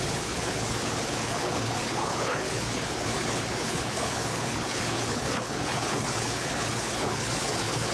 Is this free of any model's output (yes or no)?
no